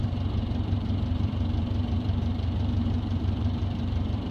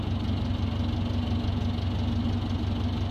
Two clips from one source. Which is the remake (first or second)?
first